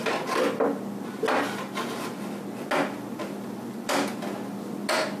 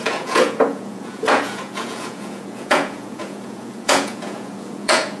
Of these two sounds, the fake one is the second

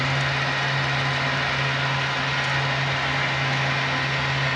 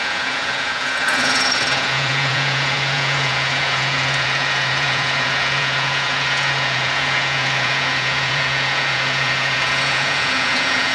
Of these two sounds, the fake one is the second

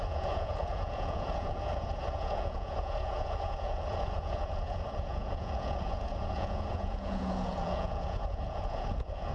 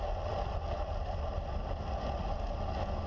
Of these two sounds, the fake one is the first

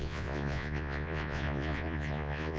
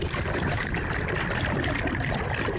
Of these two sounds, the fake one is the first